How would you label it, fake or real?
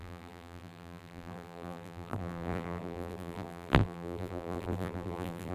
fake